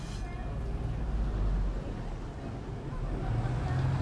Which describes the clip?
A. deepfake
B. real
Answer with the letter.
B